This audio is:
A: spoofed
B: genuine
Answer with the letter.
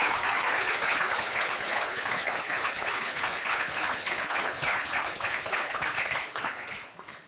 A